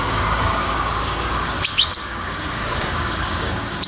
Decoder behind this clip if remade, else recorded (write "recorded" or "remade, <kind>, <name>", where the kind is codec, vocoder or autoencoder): remade, codec, DAC